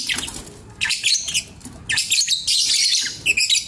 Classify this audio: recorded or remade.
recorded